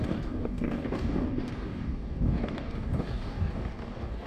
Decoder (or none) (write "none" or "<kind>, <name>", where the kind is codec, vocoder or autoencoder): codec, DAC